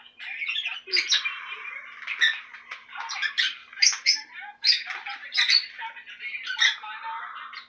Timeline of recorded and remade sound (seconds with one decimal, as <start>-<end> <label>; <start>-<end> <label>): 0.0-2.4 recorded; 2.4-7.0 remade; 7.0-7.7 recorded